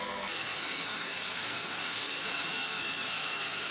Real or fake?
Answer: fake